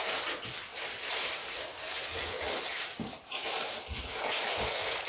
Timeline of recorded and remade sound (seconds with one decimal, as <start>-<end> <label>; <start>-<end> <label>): 0.0-0.7 recorded; 0.7-3.8 remade; 3.8-5.1 recorded